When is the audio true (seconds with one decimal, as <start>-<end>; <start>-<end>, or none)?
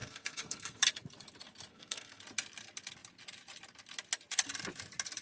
0.8-1.7; 2.2-5.2